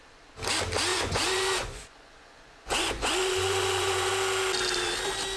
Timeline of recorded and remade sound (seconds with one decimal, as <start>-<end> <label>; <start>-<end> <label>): 0.0-0.9 recorded; 0.9-4.1 remade; 4.1-5.4 recorded